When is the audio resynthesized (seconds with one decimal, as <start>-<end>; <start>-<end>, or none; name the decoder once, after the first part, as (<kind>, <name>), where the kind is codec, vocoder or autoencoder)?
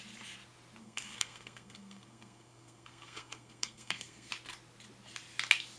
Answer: 0.8-4.3 (codec, SNAC)